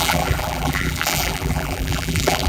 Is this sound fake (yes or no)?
yes